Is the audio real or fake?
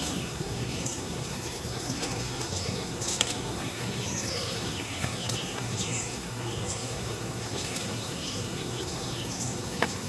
fake